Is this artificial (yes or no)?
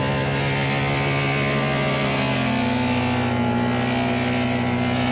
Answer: no